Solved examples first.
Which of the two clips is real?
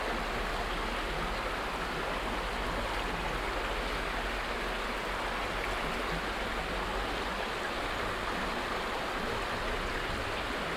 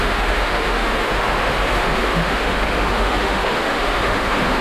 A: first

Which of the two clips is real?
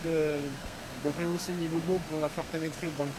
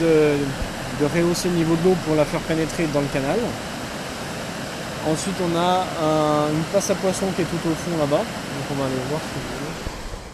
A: second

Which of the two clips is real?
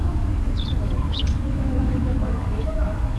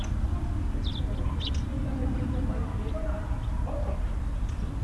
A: second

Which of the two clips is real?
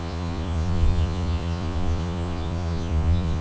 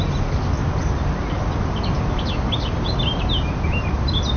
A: second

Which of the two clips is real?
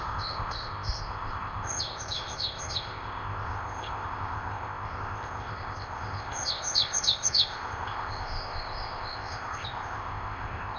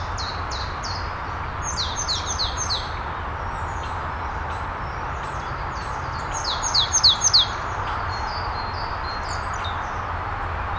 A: second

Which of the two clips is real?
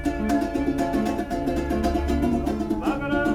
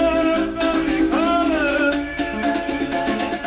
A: first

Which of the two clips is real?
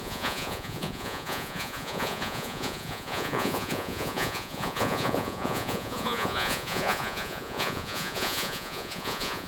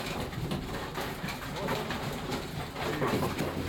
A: second